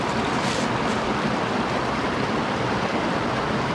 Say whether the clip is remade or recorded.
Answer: recorded